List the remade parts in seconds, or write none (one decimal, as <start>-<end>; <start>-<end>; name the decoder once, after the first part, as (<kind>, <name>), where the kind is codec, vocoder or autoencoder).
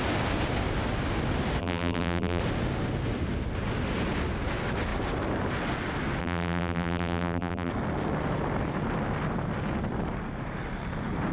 1.6-2.4 (vocoder, BigVGAN v2); 6.2-7.7